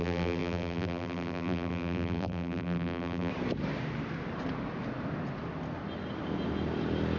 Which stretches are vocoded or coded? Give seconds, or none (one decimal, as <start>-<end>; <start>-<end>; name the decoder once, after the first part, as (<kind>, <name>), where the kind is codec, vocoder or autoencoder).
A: 0.0-3.3 (vocoder, BigVGAN v2)